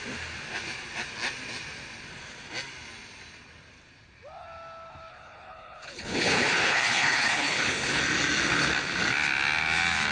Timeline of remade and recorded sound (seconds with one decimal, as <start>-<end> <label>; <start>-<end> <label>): 0.0-5.1 recorded; 5.1-8.0 remade; 8.0-10.1 recorded